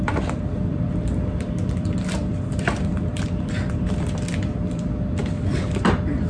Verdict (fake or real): fake